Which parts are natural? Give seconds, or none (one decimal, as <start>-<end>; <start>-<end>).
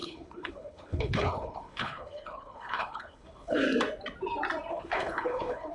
3.6-4.7